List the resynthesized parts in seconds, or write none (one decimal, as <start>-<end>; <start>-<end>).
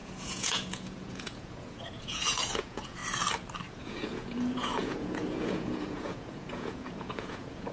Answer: 0.0-3.0; 3.7-7.7